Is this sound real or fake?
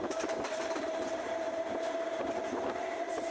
fake